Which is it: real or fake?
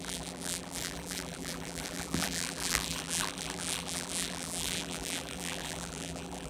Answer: fake